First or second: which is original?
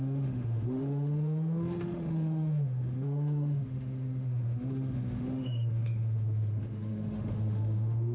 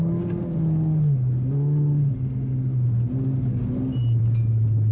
second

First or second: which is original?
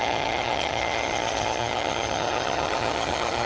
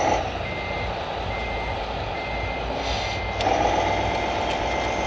second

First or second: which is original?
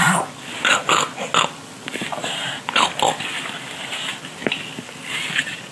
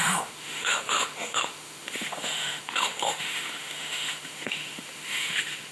first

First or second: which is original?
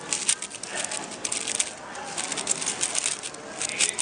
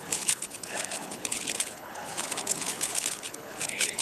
first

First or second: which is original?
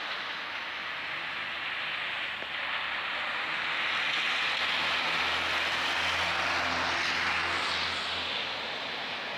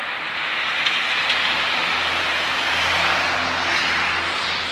first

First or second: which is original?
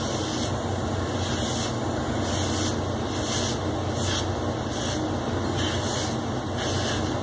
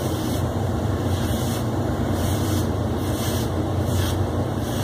first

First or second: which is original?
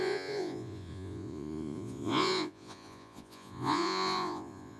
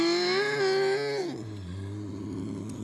second